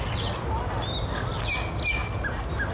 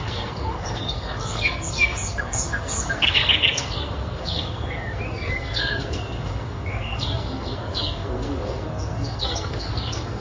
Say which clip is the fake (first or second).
second